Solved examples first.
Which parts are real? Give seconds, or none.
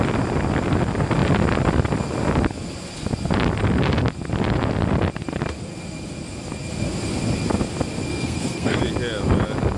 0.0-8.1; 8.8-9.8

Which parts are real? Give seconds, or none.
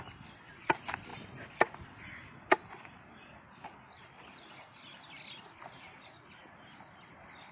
0.0-7.5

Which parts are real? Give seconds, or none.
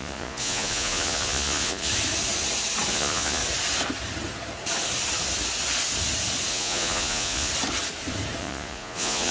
1.9-2.9; 3.4-6.5; 7.5-8.4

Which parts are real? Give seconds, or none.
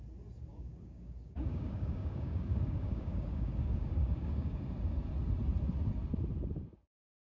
0.0-0.5; 4.6-7.3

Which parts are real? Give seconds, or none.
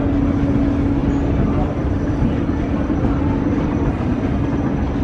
0.0-1.0; 4.0-5.0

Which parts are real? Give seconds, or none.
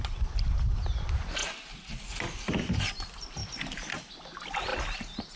0.0-5.4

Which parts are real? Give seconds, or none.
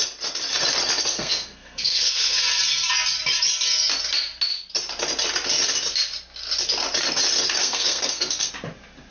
0.0-1.1; 2.4-7.6; 8.5-9.1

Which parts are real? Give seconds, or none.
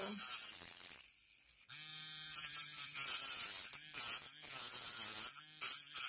0.0-1.9; 4.0-6.1